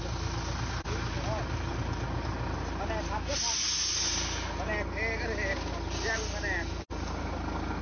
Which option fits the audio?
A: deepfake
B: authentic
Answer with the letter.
B